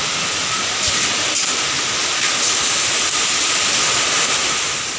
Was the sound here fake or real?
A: real